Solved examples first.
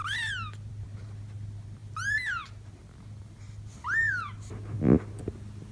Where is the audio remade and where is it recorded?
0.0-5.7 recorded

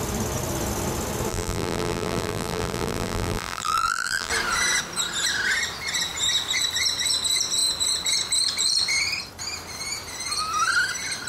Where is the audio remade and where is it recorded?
0.0-1.3 recorded; 1.3-4.3 remade; 4.3-11.3 recorded

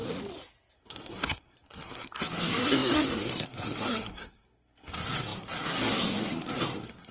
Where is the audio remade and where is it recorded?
0.0-0.7 recorded; 0.7-7.1 remade

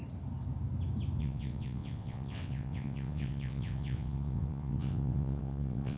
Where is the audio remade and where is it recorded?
0.0-1.2 recorded; 1.2-6.0 remade

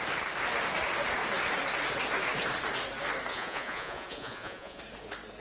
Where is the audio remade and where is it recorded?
0.0-3.3 recorded; 3.3-4.8 remade; 4.8-5.4 recorded